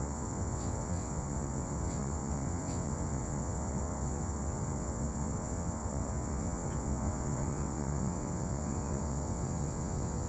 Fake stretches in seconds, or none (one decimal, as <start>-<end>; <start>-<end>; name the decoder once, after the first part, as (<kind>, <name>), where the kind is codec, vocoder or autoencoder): 0.0-10.3 (vocoder, WaveNeXt)